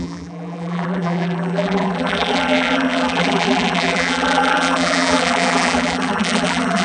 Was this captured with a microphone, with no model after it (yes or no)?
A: no